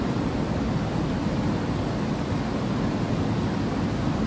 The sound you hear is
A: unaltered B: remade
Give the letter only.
A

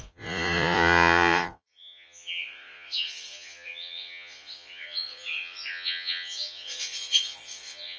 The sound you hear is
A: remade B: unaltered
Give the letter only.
A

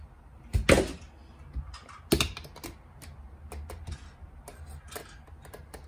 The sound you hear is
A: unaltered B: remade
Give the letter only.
A